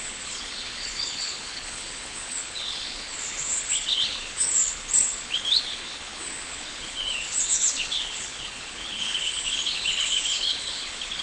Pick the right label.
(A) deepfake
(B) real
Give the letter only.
A